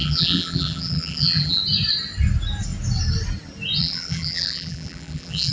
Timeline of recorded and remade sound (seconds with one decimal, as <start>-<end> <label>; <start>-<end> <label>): 0.0-1.6 remade; 1.6-3.8 recorded; 3.8-5.5 remade